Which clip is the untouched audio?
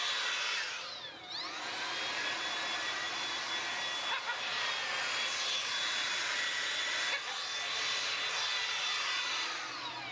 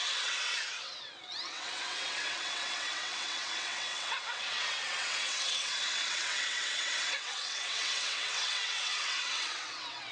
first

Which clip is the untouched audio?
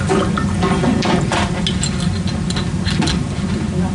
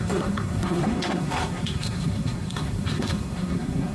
first